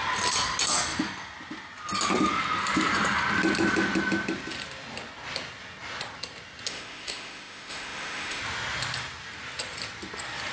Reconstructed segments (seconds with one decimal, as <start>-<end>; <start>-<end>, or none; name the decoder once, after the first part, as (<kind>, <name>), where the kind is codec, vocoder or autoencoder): 6.7-8.4 (autoencoder, DAC-VAE)